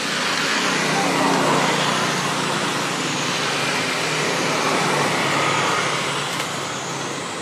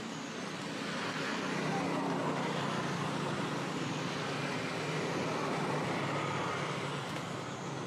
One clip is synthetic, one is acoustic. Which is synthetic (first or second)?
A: second